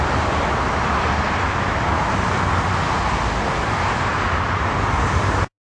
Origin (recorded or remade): recorded